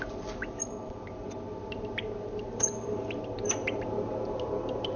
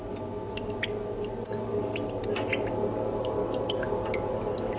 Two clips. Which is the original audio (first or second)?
second